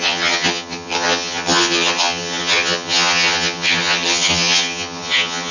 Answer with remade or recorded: remade